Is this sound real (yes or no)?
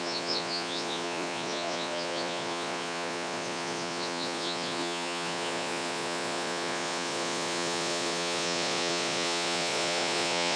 no